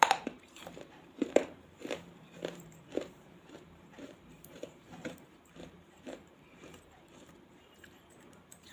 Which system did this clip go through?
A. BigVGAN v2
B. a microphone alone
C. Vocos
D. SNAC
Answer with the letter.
A